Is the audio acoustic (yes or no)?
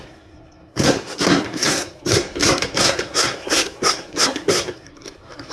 no